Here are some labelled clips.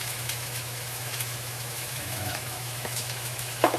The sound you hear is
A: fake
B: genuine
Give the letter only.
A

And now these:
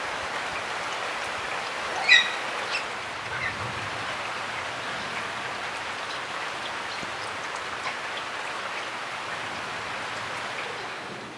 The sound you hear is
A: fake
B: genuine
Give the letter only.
B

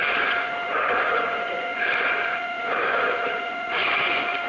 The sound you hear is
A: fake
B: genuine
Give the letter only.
A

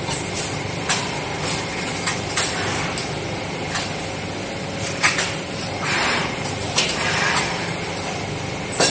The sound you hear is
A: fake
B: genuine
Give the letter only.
B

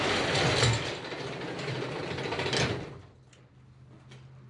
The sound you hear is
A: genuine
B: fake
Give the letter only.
A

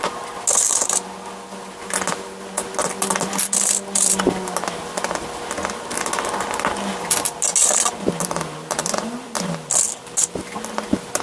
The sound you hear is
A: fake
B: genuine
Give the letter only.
B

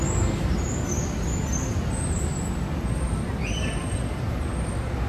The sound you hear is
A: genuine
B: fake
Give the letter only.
A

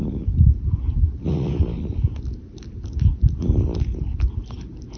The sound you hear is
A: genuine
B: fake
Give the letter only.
A